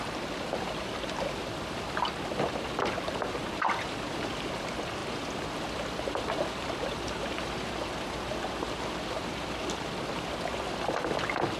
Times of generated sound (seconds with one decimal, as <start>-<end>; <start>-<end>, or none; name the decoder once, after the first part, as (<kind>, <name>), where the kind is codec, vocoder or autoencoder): 5.0-7.7 (vocoder, BigVGAN v2)